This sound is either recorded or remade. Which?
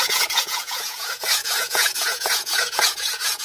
remade